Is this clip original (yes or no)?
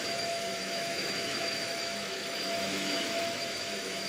no